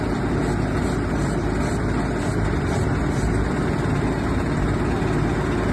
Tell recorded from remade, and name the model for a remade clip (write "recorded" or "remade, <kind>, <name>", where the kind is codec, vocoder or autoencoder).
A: recorded